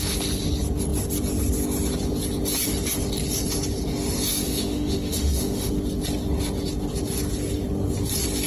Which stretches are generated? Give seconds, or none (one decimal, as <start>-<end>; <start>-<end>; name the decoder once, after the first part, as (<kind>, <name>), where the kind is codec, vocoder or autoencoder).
4.3-5.7 (autoencoder, DAC-VAE)